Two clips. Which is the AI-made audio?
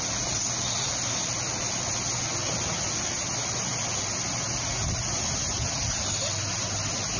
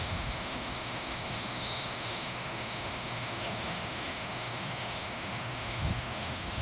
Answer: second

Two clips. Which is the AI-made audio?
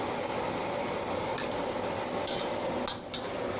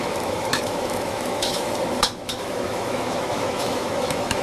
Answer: second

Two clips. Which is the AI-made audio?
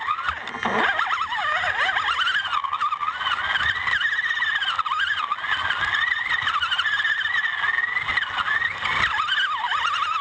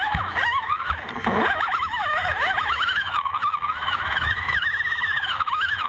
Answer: second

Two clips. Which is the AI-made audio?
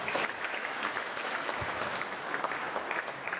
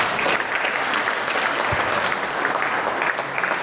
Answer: first